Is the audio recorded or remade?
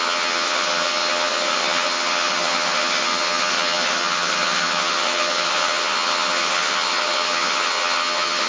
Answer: remade